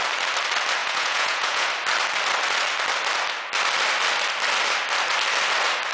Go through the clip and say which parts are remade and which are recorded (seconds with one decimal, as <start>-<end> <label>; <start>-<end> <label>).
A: 0.0-0.8 recorded; 0.8-1.7 remade; 1.7-5.9 recorded